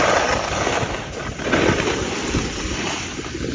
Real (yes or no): yes